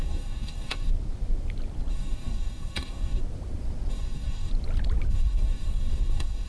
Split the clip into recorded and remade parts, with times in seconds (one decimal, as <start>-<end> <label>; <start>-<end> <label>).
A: 0.0-0.9 remade; 0.9-1.9 recorded; 1.9-3.2 remade; 3.2-3.9 recorded; 3.9-4.5 remade; 4.5-5.1 recorded; 5.1-6.5 remade